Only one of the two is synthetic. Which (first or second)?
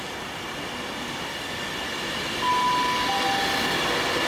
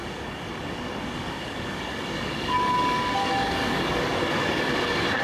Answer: second